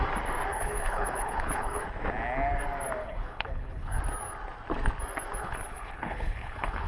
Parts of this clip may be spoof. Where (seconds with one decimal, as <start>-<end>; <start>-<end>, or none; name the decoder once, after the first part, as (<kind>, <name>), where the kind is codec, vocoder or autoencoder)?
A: 0.5-1.8 (codec, HILCodec); 3.0-4.0; 5.4-6.9